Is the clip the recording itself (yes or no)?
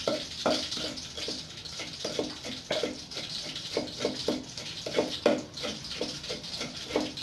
yes